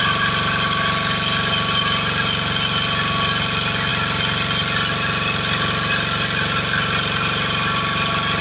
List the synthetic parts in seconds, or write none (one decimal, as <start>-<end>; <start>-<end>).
none